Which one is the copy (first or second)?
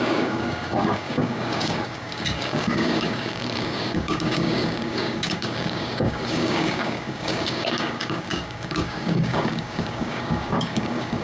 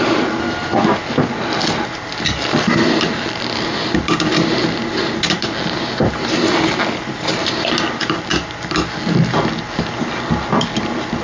first